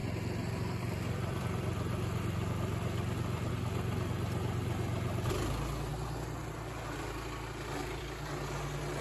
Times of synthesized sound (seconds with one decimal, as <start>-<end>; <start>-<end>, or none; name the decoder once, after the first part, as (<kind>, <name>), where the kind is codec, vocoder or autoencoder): 0.0-3.5 (vocoder, BigVGAN v2)